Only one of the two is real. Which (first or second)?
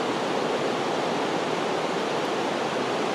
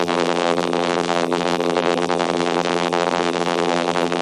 first